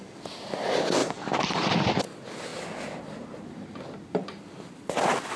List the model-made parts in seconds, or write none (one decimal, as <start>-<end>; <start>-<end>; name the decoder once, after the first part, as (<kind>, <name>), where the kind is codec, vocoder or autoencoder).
1.0-2.0 (vocoder, BigVGAN v2)